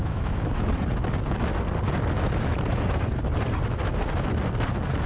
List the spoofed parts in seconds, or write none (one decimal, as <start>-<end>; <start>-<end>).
0.0-0.7